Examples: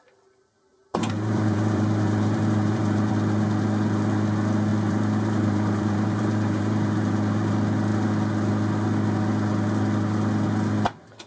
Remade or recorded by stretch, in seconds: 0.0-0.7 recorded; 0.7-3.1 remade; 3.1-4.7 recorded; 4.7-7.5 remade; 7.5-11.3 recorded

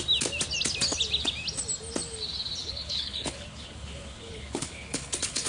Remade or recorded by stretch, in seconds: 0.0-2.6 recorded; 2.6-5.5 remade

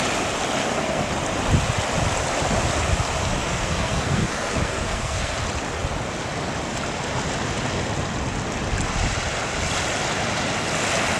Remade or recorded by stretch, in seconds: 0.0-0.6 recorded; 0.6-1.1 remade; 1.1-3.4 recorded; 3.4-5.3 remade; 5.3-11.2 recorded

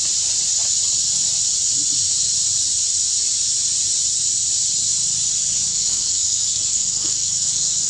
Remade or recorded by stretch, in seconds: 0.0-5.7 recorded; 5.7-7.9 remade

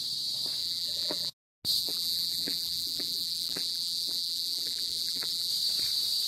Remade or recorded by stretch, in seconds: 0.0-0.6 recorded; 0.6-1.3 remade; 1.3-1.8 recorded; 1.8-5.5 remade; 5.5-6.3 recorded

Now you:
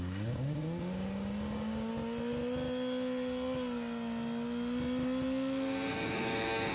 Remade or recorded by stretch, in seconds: 0.0-1.9 remade; 1.9-5.9 recorded; 5.9-6.7 remade